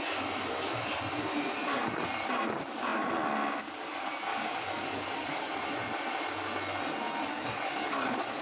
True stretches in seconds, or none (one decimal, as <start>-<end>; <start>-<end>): 0.0-4.3; 5.5-7.3